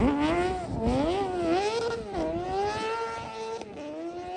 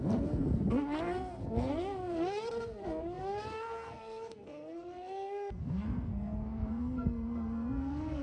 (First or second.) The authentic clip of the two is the first